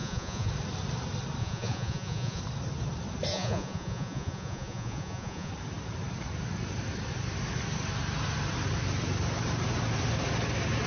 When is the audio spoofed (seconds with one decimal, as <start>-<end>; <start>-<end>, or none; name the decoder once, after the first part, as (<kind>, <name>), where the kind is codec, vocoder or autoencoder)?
0.0-0.5 (vocoder, Vocos); 1.4-2.4; 3.3-5.5